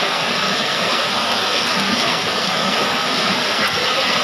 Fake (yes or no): yes